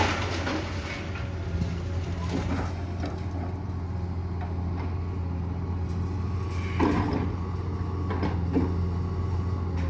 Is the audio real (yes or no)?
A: yes